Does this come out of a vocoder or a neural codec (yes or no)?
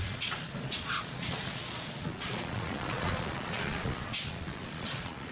yes